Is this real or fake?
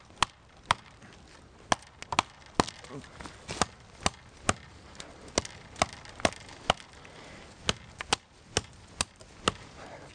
real